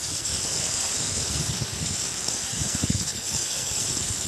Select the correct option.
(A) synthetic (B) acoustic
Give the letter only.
A